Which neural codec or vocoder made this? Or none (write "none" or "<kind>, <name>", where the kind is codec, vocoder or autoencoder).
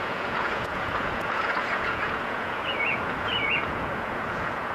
vocoder, Vocos